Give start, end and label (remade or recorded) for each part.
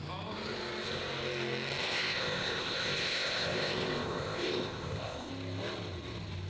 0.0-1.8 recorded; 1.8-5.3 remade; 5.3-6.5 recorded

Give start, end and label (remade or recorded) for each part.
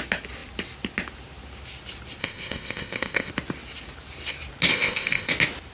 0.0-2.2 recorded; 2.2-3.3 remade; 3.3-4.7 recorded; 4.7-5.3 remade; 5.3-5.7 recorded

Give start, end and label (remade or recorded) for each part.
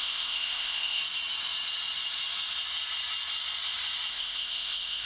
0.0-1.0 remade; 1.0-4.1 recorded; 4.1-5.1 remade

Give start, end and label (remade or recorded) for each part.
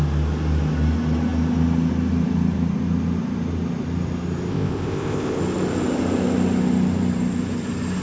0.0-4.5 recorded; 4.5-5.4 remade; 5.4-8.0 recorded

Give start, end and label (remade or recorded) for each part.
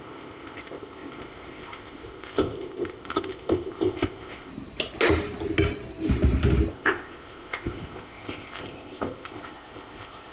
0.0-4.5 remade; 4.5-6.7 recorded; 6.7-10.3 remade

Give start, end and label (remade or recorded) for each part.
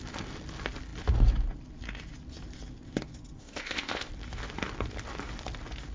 0.0-3.4 recorded; 3.4-4.1 remade; 4.1-5.9 recorded